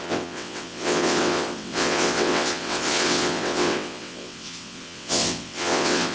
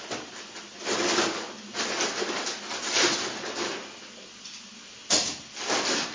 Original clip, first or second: second